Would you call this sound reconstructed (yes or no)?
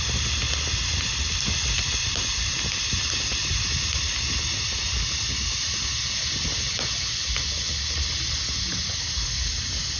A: no